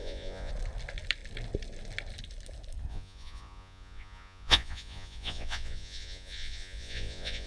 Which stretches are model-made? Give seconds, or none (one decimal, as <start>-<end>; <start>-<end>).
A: 0.0-0.5; 2.9-7.5

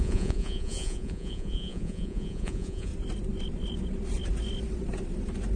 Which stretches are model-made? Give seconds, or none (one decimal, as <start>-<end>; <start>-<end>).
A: 0.0-2.9

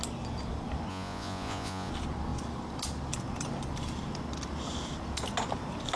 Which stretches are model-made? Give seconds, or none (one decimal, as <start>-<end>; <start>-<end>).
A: 0.9-1.9

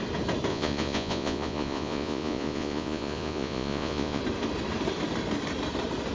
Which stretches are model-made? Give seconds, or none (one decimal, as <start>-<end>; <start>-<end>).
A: 0.5-4.2

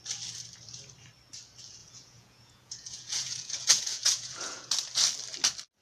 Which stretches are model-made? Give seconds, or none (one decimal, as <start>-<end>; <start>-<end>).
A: 1.8-4.7

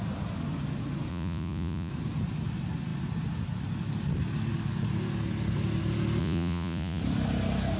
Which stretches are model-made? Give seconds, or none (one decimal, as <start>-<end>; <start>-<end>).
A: 1.1-1.9; 6.2-7.0

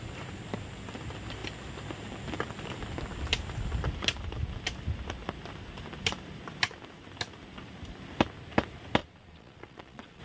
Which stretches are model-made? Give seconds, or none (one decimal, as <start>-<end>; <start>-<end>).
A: 9.0-10.2

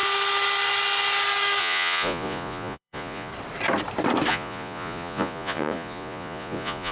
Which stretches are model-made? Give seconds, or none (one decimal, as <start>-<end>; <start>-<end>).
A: 1.6-3.3; 4.3-6.9